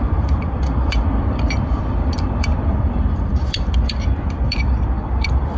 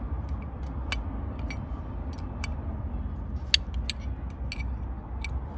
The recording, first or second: second